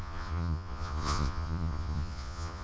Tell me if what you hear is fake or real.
fake